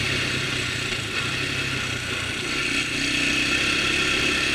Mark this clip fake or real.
real